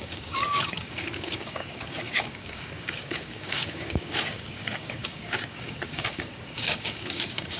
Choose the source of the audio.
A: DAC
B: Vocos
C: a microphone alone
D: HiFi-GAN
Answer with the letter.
A